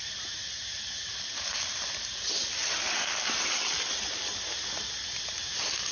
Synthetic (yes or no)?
no